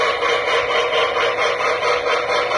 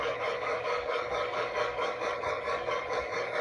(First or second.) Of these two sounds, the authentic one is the first